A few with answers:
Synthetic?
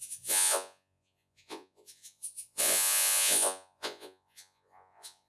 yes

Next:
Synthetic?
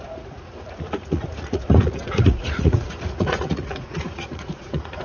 yes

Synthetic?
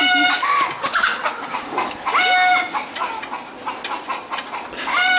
no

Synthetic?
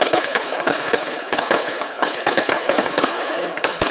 yes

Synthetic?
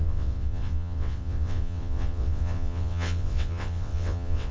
yes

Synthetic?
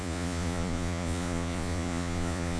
yes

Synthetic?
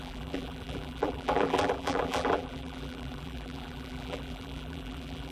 yes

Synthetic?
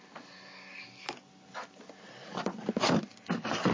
no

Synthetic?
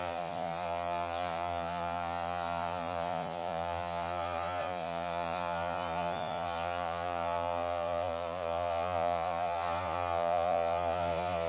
yes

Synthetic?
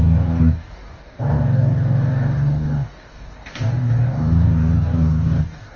yes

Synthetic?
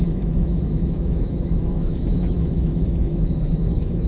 yes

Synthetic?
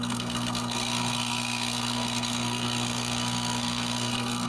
yes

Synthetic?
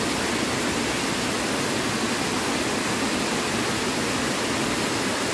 no